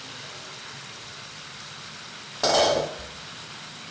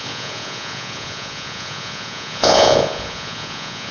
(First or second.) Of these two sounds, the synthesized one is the second